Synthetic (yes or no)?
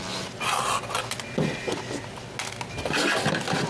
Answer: no